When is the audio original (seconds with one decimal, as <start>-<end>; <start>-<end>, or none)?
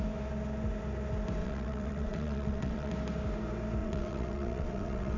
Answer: 0.0-1.4; 2.9-3.8